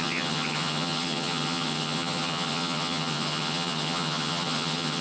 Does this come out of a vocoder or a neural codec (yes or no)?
yes